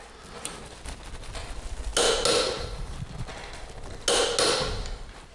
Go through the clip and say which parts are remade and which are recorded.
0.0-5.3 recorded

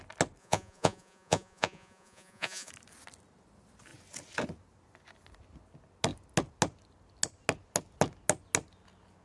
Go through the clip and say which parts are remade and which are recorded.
0.0-0.4 recorded; 0.4-2.7 remade; 2.7-9.2 recorded